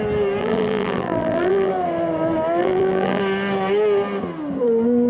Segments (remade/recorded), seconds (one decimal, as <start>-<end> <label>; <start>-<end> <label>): 0.0-0.4 recorded; 0.4-1.7 remade; 1.7-2.6 recorded; 2.6-3.2 remade; 3.2-5.1 recorded